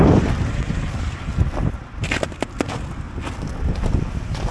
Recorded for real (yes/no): yes